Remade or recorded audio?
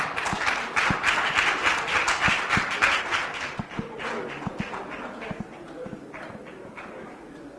recorded